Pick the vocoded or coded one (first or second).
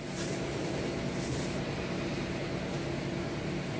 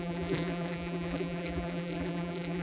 second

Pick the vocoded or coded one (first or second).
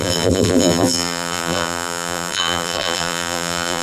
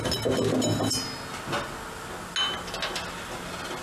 first